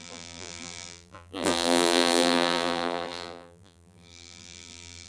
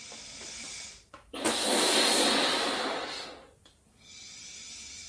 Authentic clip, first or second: second